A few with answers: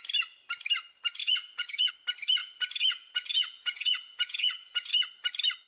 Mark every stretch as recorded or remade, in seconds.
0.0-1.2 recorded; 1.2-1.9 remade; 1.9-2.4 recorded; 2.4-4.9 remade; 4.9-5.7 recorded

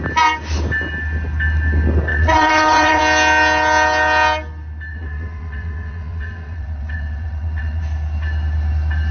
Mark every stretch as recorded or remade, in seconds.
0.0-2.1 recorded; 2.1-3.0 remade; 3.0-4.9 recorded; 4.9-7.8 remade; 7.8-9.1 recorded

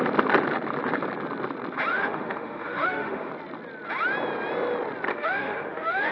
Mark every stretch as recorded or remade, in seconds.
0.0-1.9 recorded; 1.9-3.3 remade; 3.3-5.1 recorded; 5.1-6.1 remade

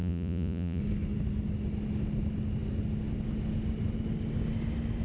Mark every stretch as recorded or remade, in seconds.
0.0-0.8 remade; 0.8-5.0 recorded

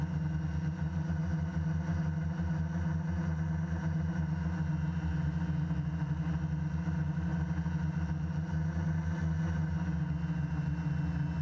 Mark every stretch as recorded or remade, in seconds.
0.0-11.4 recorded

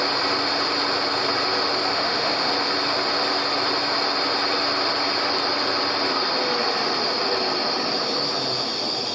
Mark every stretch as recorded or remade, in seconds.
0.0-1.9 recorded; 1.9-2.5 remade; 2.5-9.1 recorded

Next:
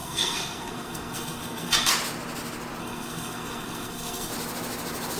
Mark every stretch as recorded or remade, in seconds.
0.0-1.9 remade; 1.9-2.8 recorded; 2.8-4.3 remade; 4.3-5.2 recorded